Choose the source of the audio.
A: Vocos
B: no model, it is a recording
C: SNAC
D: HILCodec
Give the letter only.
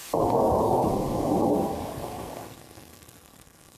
C